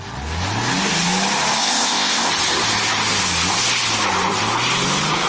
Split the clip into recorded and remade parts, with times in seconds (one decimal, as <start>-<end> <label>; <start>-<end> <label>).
0.0-1.6 recorded; 1.6-2.3 remade; 2.3-5.3 recorded